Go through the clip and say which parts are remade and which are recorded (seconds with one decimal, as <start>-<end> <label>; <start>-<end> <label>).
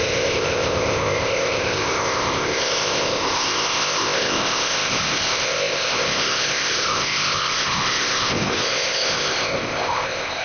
0.0-10.4 remade